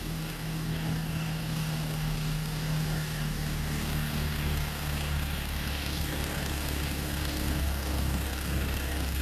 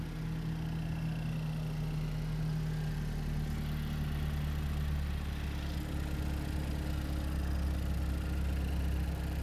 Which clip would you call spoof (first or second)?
first